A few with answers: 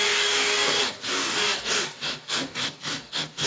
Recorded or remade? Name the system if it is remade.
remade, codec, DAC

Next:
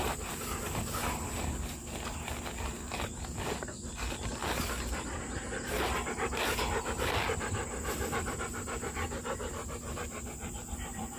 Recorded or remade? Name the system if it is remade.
recorded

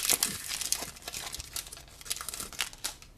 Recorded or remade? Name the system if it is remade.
recorded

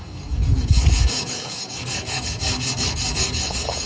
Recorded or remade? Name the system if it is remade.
remade, codec, DAC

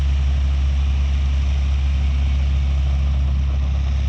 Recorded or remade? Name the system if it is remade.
recorded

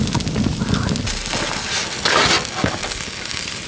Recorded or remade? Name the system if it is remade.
recorded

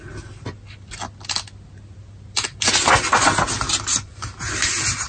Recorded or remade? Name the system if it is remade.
recorded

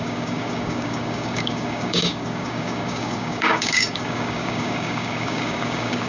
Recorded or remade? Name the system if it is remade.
remade, codec, DAC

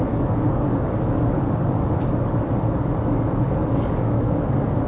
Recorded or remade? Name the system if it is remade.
remade, codec, DAC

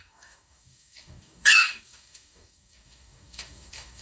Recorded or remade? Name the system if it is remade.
remade, codec, DAC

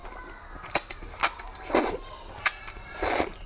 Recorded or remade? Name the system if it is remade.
recorded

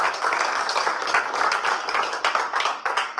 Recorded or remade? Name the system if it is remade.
remade, codec, DAC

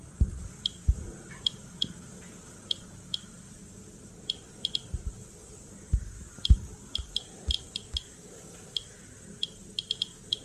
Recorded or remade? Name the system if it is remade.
recorded